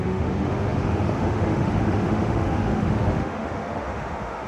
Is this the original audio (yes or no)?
no